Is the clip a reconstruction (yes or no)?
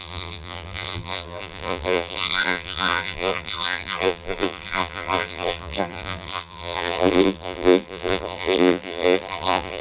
yes